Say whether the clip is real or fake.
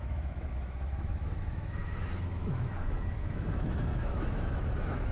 fake